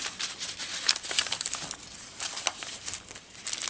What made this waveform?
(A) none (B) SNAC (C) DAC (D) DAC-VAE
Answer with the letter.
A